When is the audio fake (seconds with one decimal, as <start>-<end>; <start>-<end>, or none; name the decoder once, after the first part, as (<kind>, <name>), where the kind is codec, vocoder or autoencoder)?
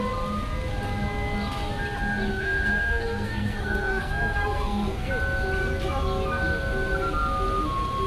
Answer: 2.3-5.1 (codec, SNAC)